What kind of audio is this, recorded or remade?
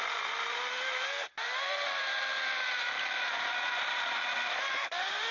remade